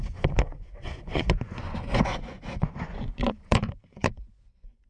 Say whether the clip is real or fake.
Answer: fake